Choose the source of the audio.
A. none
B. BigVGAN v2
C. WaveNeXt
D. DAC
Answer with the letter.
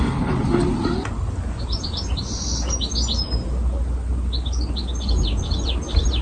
A